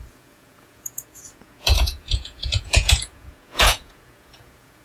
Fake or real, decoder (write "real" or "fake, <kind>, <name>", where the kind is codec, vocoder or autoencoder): fake, vocoder, Vocos